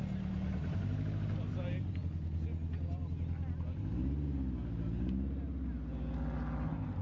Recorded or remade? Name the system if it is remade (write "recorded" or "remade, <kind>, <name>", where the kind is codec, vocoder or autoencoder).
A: recorded